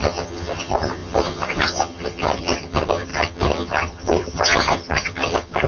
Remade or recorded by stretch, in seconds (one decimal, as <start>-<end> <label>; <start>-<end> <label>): 0.0-5.7 remade

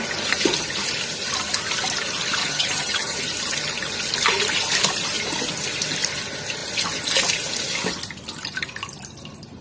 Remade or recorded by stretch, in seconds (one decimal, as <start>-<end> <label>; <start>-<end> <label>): 0.0-2.4 recorded; 2.4-3.2 remade; 3.2-9.6 recorded

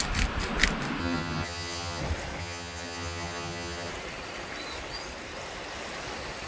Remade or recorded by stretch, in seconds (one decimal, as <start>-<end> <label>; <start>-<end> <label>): 0.0-1.0 recorded; 1.0-2.0 remade; 2.0-2.4 recorded; 2.4-3.9 remade; 3.9-6.5 recorded

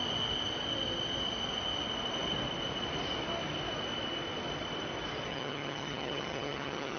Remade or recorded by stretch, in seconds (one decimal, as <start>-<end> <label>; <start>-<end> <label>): 0.0-5.3 recorded; 5.3-7.0 remade

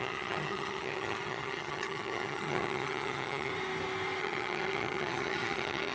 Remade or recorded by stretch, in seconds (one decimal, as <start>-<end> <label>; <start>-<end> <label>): 0.0-3.5 remade; 3.5-4.2 recorded; 4.2-5.9 remade

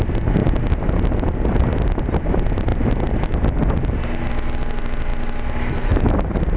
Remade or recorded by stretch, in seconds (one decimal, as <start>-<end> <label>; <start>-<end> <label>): 0.0-6.6 recorded

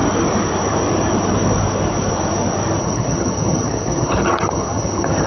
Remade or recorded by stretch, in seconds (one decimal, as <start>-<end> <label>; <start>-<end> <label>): 0.0-2.8 recorded; 2.8-5.3 remade